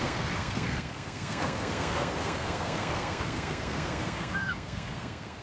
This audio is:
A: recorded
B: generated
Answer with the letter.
B